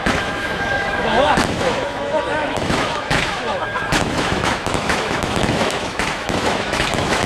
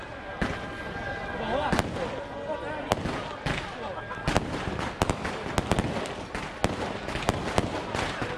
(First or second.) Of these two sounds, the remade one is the first